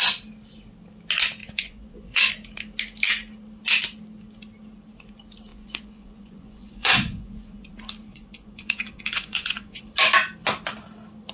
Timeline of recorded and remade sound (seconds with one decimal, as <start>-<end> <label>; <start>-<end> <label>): 0.0-1.4 recorded; 1.4-2.3 remade; 2.3-5.5 recorded; 5.5-7.7 remade; 7.7-8.1 recorded; 8.1-9.8 remade; 9.8-11.3 recorded